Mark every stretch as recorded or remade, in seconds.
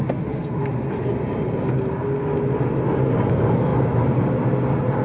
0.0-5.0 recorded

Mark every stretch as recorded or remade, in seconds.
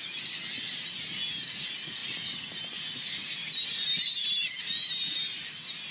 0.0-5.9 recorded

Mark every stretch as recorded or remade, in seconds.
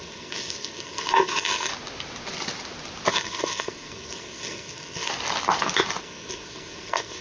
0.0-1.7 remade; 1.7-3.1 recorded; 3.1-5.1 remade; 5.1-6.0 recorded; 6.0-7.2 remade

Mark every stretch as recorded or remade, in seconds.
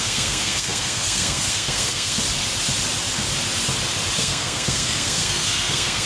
0.0-2.2 remade; 2.2-4.2 recorded; 4.2-6.1 remade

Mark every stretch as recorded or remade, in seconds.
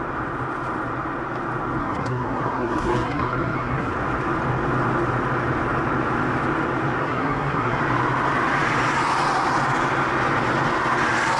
0.0-1.8 recorded; 1.8-3.9 remade; 3.9-7.0 recorded; 7.0-7.8 remade; 7.8-11.4 recorded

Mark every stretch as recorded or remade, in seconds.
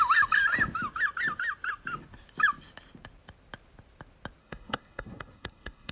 0.0-4.4 recorded; 4.4-5.9 remade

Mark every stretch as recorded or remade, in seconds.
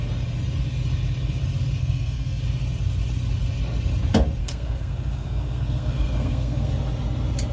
0.0-1.8 recorded; 1.8-2.4 remade; 2.4-4.4 recorded; 4.4-6.7 remade; 6.7-7.5 recorded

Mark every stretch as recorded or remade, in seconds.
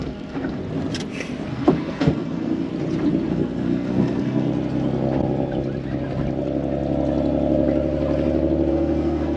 0.0-0.6 remade; 0.6-1.5 recorded; 1.5-2.7 remade; 2.7-3.3 recorded; 3.3-4.5 remade; 4.5-8.7 recorded; 8.7-9.4 remade